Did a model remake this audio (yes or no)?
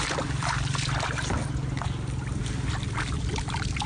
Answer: no